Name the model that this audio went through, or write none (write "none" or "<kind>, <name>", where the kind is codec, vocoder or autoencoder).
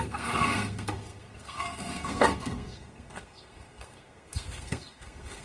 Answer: codec, SNAC